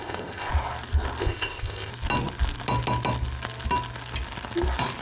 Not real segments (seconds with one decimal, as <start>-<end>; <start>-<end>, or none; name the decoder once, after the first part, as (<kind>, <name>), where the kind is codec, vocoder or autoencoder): 0.0-0.5 (codec, ZipCodec); 1.2-1.9